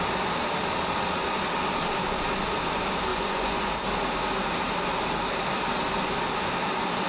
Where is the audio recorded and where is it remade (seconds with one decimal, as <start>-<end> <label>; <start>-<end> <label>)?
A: 0.0-3.1 recorded; 3.1-3.7 remade; 3.7-7.1 recorded